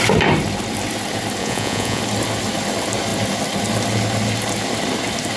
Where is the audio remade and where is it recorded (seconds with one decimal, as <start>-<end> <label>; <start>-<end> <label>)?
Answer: 0.0-1.4 recorded; 1.4-2.0 remade; 2.0-5.4 recorded